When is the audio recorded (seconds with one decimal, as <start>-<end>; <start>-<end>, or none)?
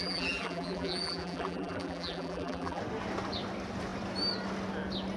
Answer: 2.8-5.2